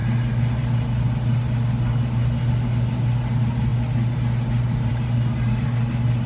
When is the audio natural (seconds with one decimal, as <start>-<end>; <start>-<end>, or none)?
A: 0.0-6.3